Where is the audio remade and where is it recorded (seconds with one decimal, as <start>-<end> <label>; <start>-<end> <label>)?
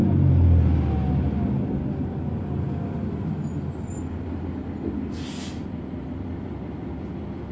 0.0-7.5 recorded